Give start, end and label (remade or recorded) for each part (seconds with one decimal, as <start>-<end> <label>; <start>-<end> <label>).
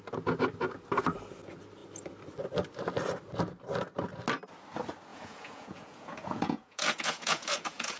0.0-5.1 recorded; 5.1-8.0 remade